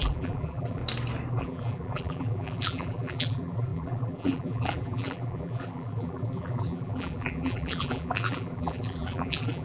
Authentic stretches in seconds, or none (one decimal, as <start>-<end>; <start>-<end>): 0.8-1.3